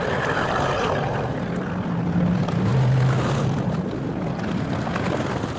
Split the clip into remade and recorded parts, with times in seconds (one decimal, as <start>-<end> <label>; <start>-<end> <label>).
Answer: 0.0-5.6 recorded